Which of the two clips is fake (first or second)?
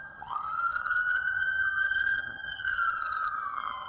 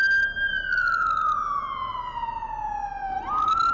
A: first